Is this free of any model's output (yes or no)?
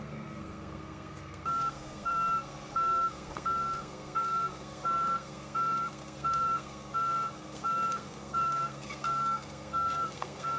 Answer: no